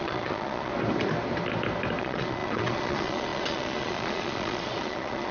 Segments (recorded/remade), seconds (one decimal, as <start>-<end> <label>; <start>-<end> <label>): 0.0-0.7 remade; 0.7-2.0 recorded; 2.0-5.3 remade